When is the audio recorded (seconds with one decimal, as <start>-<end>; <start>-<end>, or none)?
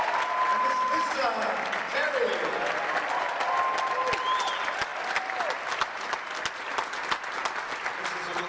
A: 0.0-8.5